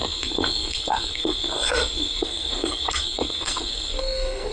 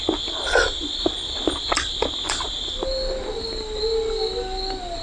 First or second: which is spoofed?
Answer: first